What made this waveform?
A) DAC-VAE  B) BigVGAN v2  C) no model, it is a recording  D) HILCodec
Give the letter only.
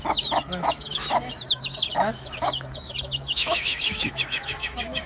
A